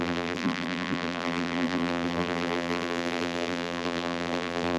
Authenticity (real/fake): fake